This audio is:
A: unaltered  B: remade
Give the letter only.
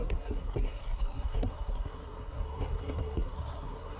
B